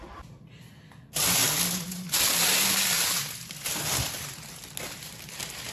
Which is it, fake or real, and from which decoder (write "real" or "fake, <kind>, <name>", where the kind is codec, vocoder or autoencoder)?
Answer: real